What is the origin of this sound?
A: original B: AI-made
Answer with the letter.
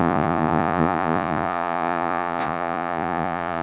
B